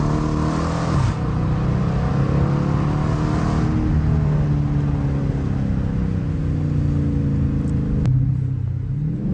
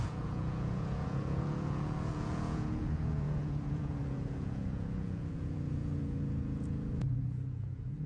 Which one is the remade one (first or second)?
second